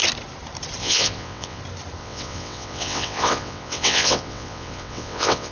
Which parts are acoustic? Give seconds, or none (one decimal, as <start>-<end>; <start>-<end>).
0.0-0.8; 1.6-2.0

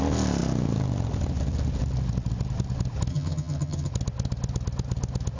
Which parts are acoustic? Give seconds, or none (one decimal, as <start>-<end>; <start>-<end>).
0.0-3.1; 3.9-5.4

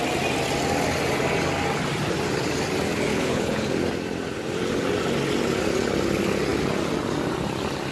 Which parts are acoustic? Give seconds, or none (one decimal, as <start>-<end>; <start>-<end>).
0.0-3.1; 3.7-7.9

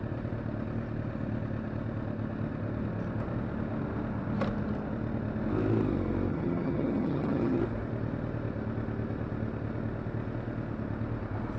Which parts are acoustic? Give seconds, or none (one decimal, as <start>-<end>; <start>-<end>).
0.0-6.3; 7.6-11.6

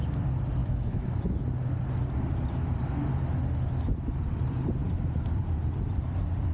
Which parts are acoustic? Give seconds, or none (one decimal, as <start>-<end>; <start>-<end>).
0.0-0.6; 1.4-6.5

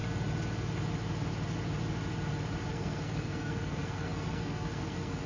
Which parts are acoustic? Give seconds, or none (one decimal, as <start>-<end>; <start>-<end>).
0.0-2.7